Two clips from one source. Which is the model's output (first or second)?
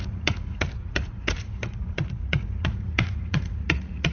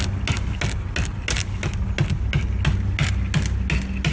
first